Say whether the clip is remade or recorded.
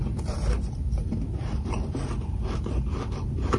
remade